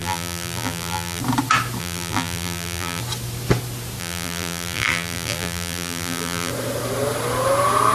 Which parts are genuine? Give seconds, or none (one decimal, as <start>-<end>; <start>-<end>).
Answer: 1.2-1.8; 3.0-4.0; 6.5-7.9